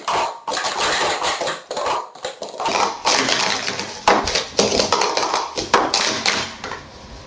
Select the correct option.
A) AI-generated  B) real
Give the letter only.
B